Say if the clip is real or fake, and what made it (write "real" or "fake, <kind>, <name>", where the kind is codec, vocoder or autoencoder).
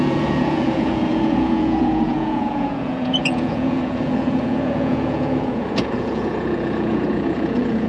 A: fake, vocoder, Vocos